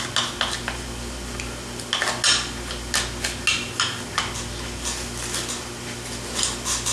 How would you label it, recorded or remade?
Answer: recorded